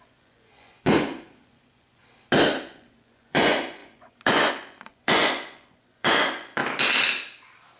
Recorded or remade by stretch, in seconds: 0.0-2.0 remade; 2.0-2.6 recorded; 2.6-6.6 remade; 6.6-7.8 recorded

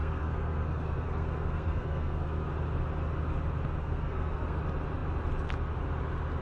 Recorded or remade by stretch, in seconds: 0.0-2.5 remade; 2.5-3.8 recorded; 3.8-4.6 remade; 4.6-6.4 recorded

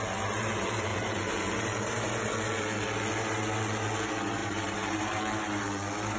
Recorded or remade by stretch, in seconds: 0.0-0.9 recorded; 0.9-2.3 remade; 2.3-4.4 recorded; 4.4-5.4 remade; 5.4-6.2 recorded

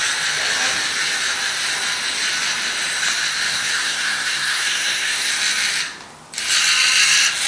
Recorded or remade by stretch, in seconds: 0.0-3.5 recorded; 3.5-5.3 remade; 5.3-7.5 recorded

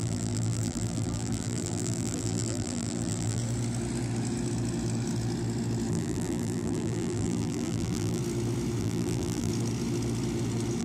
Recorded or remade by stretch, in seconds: 0.0-3.4 remade; 3.4-5.9 recorded; 5.9-8.2 remade; 8.2-8.8 recorded; 8.8-9.5 remade; 9.5-10.8 recorded

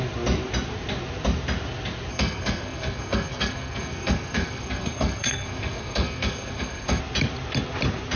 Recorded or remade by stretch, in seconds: 0.0-2.1 recorded; 2.1-7.0 remade; 7.0-8.2 recorded

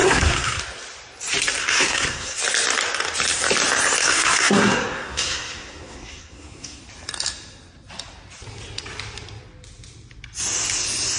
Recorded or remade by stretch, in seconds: 0.0-0.6 remade; 0.6-1.6 recorded; 1.6-2.4 remade; 2.4-4.0 recorded; 4.0-6.8 remade; 6.8-11.2 recorded

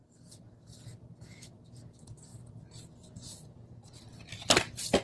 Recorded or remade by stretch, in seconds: 0.0-5.0 recorded